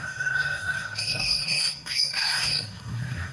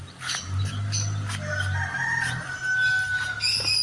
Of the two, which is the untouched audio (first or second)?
second